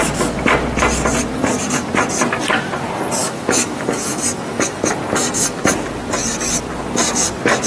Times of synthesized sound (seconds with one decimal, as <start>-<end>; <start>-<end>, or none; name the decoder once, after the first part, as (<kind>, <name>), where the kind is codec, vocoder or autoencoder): 3.2-4.8 (autoencoder, DAC-VAE)